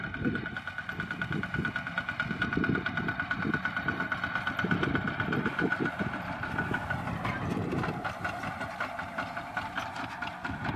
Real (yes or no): no